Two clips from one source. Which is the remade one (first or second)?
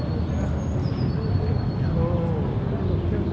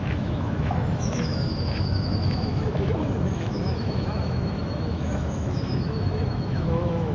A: second